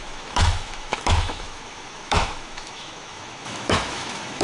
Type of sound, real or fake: fake